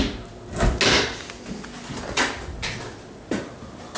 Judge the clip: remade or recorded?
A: recorded